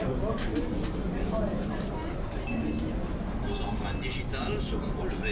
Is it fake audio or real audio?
real